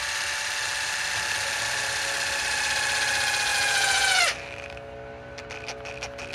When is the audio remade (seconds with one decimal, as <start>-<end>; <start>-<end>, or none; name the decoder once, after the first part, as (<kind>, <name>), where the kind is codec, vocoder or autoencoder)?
3.5-4.2 (vocoder, Vocos)